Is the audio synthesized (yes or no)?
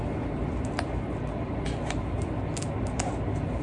no